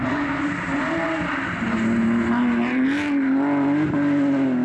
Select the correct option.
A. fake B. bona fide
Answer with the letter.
B